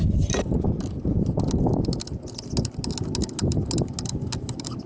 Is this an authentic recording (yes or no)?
yes